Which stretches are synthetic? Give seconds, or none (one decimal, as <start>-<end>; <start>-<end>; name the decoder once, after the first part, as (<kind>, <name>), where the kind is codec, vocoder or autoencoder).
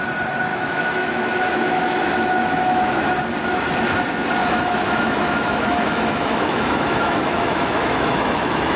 0.5-3.1 (autoencoder, DAC-VAE); 4.4-8.8